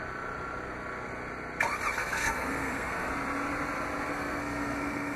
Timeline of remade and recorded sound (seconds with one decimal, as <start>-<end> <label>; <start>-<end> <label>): 0.0-2.0 recorded; 2.0-3.1 remade; 3.1-4.1 recorded; 4.1-5.2 remade